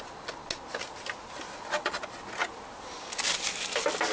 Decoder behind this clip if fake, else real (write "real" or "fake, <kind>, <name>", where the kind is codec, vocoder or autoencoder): real